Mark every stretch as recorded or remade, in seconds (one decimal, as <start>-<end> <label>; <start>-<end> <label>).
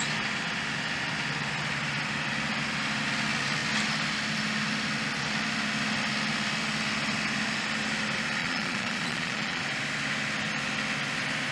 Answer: 0.0-8.4 recorded; 8.4-9.6 remade; 9.6-11.5 recorded